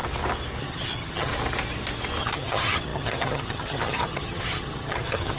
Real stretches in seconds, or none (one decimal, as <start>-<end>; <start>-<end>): 0.0-0.6; 1.3-2.2